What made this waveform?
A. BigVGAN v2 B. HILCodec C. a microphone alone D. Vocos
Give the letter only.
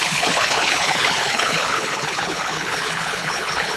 B